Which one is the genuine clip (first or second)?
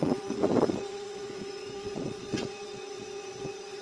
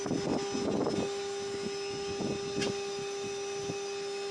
second